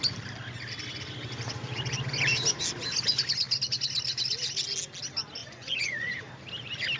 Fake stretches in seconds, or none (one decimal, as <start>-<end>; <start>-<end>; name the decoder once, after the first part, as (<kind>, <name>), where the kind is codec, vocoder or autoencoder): 5.4-6.1 (vocoder, Vocos)